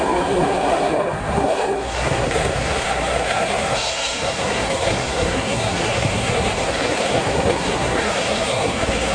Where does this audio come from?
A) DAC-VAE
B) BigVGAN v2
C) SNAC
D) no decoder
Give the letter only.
C